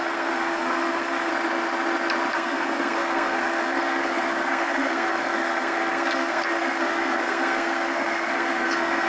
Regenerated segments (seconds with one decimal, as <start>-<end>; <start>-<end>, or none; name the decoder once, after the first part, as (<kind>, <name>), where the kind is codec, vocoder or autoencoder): 0.0-1.3 (codec, SNAC); 2.3-9.1